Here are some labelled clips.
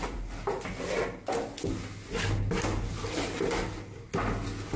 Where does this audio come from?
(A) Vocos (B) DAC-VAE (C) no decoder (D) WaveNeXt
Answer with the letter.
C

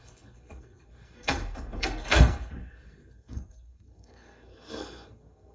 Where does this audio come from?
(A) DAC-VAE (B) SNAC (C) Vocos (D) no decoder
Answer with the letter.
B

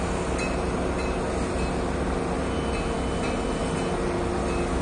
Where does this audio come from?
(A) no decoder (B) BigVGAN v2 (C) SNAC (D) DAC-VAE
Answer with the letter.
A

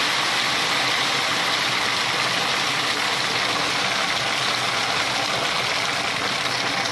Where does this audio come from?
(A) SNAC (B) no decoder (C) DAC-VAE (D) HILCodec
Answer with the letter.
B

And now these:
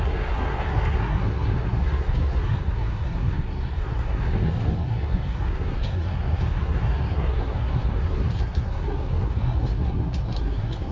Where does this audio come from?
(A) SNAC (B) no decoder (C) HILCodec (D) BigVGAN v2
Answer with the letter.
A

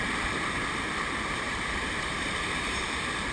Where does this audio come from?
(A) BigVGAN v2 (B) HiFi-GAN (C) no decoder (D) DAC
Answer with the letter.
A